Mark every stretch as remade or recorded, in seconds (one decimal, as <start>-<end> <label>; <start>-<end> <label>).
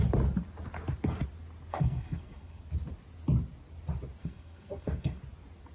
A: 0.0-1.7 recorded; 1.7-2.6 remade; 2.6-4.2 recorded; 4.2-5.2 remade; 5.2-5.7 recorded